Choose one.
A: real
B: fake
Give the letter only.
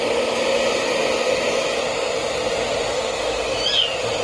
A